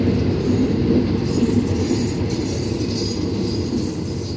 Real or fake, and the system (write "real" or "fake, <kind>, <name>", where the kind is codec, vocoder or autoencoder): real